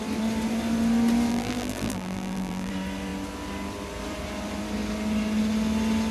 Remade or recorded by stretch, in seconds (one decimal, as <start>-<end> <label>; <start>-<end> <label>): 0.0-1.3 recorded; 1.3-2.7 remade; 2.7-6.1 recorded